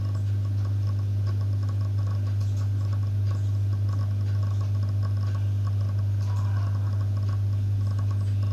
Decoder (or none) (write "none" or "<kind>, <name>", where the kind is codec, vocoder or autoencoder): none